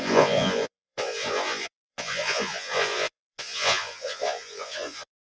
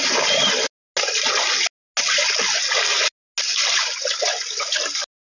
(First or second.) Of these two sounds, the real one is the second